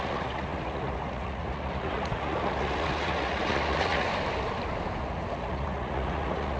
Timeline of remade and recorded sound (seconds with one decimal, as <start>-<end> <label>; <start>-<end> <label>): 0.0-4.1 remade; 4.1-5.0 recorded; 5.0-6.6 remade

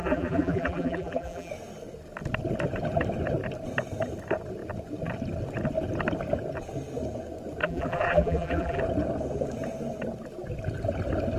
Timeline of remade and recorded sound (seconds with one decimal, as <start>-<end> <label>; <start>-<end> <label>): 0.0-1.5 remade; 1.5-7.6 recorded; 7.6-8.8 remade; 8.8-11.4 recorded